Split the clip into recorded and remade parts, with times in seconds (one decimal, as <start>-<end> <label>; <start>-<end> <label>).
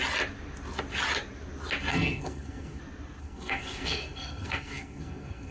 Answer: 0.0-1.9 recorded; 1.9-2.8 remade; 2.8-3.2 recorded; 3.2-5.5 remade